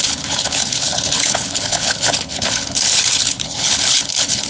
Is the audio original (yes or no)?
no